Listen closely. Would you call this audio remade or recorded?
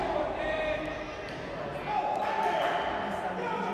recorded